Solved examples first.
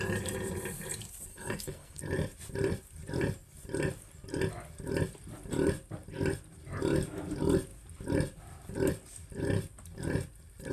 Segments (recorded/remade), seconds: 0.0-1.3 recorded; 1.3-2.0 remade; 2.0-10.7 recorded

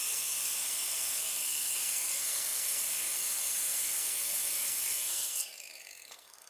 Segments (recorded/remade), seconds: 0.0-6.5 remade

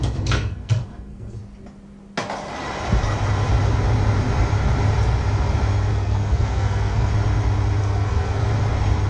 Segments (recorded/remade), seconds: 0.0-1.4 remade; 1.4-5.9 recorded; 5.9-7.1 remade; 7.1-7.8 recorded; 7.8-8.4 remade; 8.4-9.1 recorded